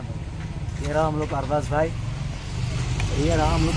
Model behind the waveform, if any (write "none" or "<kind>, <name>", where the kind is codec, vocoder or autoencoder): none